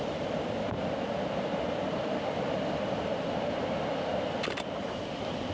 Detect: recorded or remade recorded